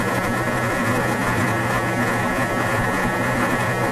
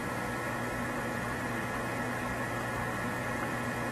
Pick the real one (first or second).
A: second